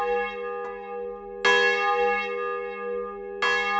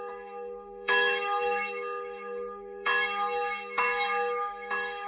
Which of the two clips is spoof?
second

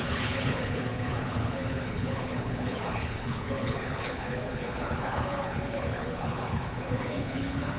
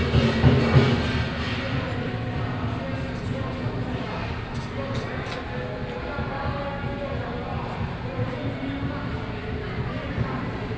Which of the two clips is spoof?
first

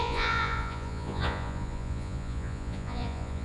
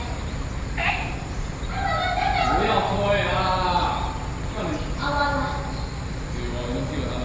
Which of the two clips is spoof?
first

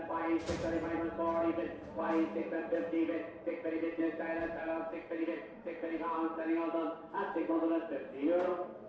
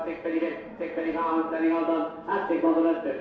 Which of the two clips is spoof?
first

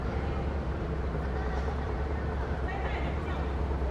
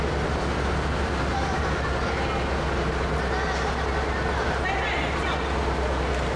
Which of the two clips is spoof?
first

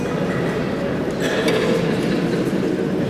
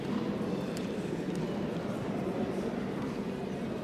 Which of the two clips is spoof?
second